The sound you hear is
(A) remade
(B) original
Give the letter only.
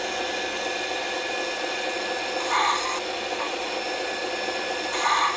B